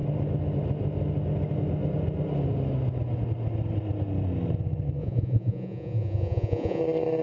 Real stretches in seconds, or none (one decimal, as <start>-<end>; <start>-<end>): 0.0-5.0; 6.8-7.2